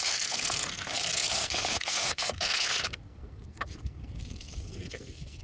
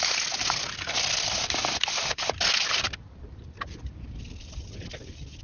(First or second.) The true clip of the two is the second